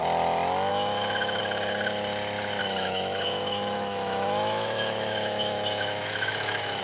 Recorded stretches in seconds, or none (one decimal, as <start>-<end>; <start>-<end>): 0.0-0.7; 1.4-2.6